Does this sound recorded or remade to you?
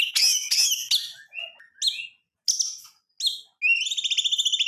recorded